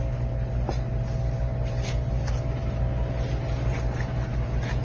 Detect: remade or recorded recorded